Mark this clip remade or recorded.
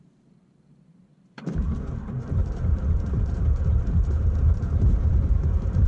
remade